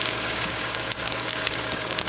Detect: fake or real fake